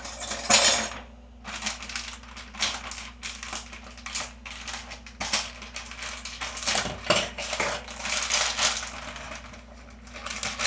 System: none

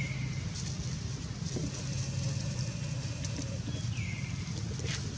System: none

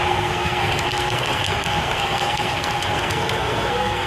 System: codec, SNAC